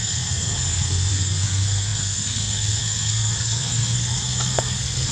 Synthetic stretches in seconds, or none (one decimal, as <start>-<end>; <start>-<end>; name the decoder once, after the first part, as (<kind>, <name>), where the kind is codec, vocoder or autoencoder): 0.0-5.1 (codec, SNAC)